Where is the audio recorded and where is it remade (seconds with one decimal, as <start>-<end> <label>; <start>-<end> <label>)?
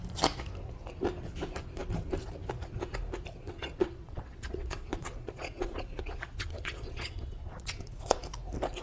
0.0-3.4 recorded; 3.4-8.2 remade; 8.2-8.8 recorded